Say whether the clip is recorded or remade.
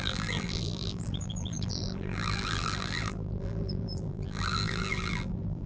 remade